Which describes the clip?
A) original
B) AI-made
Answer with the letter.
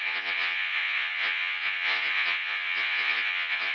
B